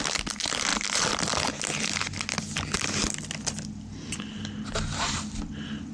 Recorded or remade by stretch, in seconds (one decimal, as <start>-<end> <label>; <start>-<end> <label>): 0.0-5.9 recorded